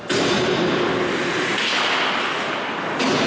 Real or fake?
real